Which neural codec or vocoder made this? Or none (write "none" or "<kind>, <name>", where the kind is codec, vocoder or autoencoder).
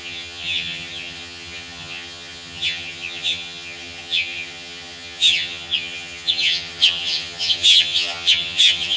vocoder, HiFi-GAN